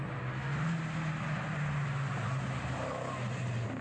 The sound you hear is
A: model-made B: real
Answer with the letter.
B